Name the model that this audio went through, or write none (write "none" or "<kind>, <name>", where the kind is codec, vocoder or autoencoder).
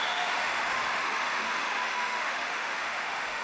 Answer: autoencoder, DAC-VAE